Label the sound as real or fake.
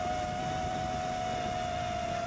real